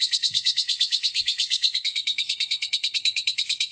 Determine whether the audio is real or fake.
fake